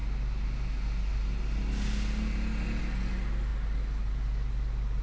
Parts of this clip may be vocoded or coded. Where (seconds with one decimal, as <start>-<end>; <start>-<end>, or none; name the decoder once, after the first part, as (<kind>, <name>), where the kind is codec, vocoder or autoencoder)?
none

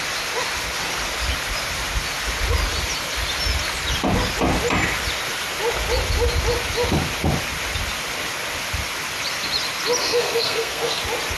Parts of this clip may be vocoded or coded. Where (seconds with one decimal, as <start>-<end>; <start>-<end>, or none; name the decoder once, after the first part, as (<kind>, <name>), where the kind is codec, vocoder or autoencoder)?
10.0-11.0 (codec, SNAC)

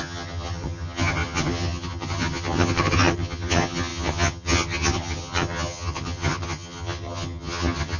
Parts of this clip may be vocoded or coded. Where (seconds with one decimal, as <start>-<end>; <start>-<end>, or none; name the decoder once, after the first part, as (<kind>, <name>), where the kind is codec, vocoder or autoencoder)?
0.0-8.0 (vocoder, HiFi-GAN)

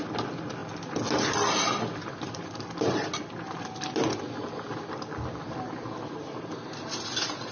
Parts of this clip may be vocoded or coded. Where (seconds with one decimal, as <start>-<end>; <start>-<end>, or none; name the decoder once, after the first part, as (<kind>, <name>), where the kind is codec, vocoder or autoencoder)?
none